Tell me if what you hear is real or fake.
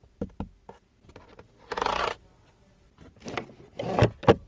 real